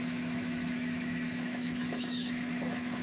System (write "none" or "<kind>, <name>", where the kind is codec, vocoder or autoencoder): autoencoder, DAC-VAE